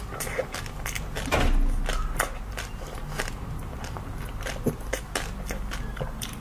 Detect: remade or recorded recorded